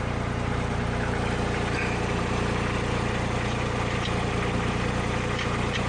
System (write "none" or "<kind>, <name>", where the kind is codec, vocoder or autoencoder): vocoder, BigVGAN v2